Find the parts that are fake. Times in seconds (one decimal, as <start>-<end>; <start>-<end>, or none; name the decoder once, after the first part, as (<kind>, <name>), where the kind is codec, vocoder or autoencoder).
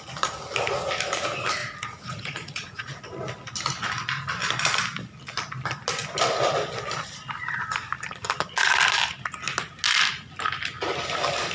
1.6-3.0 (vocoder, Vocos)